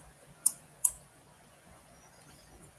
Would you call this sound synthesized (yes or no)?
yes